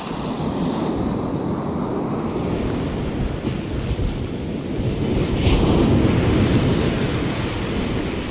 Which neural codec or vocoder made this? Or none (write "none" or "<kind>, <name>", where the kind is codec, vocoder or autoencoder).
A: none